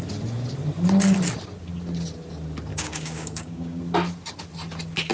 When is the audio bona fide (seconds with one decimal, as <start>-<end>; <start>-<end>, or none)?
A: 0.0-2.7; 3.8-5.1